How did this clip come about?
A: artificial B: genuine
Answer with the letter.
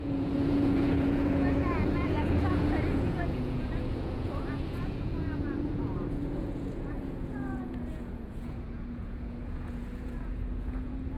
A